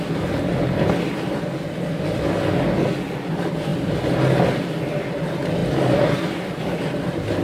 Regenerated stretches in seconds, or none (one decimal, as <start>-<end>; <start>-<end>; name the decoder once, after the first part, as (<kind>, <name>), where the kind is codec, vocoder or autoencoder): none